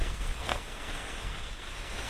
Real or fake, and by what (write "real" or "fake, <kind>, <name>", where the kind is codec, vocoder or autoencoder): fake, codec, SNAC